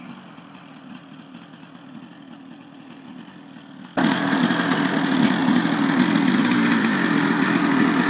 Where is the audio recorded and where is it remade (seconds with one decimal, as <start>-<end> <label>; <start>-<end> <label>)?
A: 0.0-8.1 recorded